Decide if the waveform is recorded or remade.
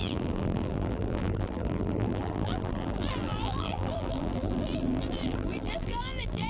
remade